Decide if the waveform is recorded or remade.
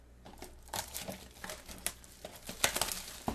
recorded